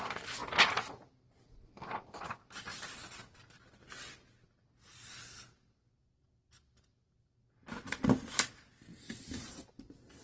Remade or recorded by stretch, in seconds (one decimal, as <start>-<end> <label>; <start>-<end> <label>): 0.0-8.9 recorded; 8.9-9.7 remade; 9.7-10.2 recorded